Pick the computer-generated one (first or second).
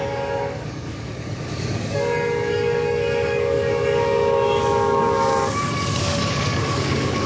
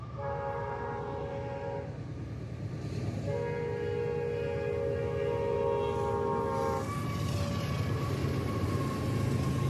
first